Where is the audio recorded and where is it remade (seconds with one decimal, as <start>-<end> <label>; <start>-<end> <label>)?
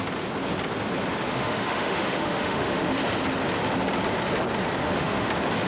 0.0-1.3 recorded; 1.3-2.9 remade; 2.9-4.8 recorded; 4.8-5.3 remade; 5.3-5.7 recorded